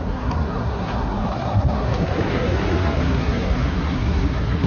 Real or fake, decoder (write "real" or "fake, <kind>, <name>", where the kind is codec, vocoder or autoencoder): fake, codec, SNAC